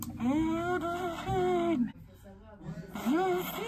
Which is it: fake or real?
real